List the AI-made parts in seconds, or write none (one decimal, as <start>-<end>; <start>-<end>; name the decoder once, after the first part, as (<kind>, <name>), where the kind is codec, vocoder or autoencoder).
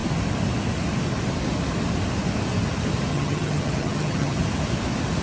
3.1-4.4 (vocoder, HiFi-GAN)